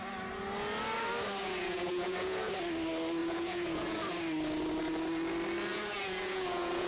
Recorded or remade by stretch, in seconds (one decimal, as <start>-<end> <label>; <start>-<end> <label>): 0.0-1.4 recorded; 1.4-2.5 remade; 2.5-3.2 recorded; 3.2-4.0 remade; 4.0-5.7 recorded; 5.7-6.9 remade